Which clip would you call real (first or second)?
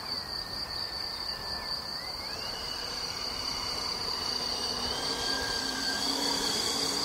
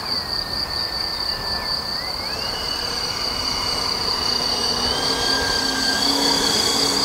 second